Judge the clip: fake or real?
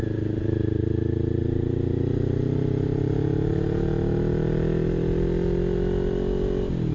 real